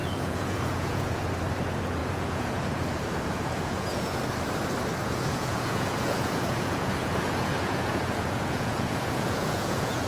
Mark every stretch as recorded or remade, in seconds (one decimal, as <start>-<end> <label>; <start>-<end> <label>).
0.0-1.2 remade; 1.2-2.0 recorded; 2.0-4.2 remade; 4.2-5.0 recorded; 5.0-10.1 remade